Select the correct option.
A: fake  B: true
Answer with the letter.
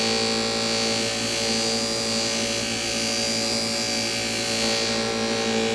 B